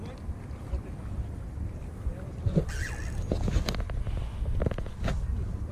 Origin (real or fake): real